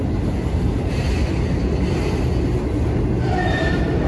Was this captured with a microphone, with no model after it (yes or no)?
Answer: yes